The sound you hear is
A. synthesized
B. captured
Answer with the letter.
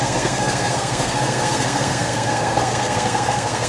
A